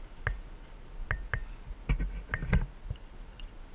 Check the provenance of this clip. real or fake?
real